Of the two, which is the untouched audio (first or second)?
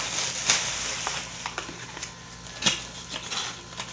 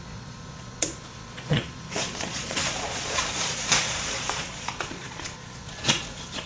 first